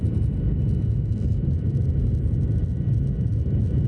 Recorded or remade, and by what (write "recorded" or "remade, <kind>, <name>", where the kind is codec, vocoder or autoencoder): recorded